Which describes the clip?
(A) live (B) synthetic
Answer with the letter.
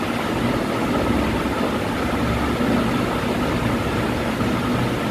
A